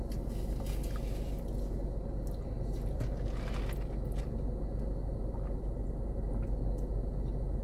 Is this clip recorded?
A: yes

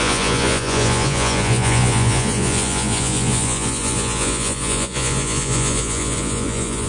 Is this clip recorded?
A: no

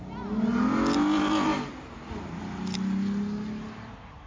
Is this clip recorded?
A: yes